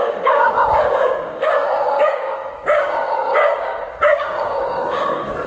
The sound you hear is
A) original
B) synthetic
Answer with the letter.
B